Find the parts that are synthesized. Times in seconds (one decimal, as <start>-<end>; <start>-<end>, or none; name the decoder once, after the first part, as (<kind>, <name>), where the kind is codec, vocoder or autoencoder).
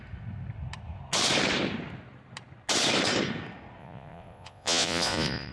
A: 3.8-5.5 (vocoder, Vocos)